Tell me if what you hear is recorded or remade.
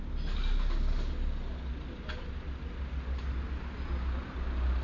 recorded